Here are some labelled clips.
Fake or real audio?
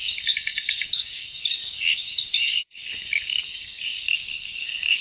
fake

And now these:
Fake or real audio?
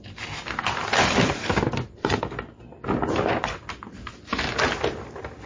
real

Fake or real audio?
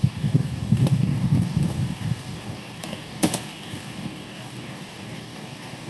fake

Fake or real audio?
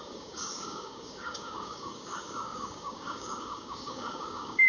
fake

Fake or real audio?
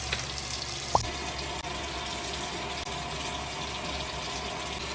real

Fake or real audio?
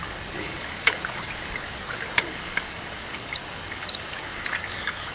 fake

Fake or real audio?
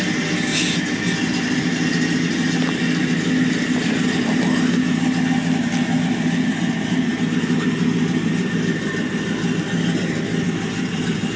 real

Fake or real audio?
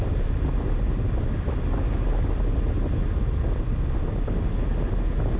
real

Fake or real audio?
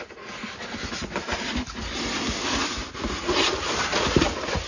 real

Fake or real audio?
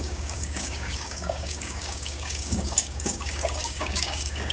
fake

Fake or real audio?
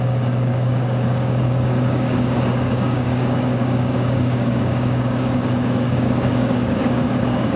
fake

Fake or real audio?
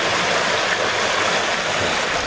real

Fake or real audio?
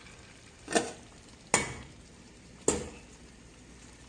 real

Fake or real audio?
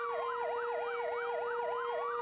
real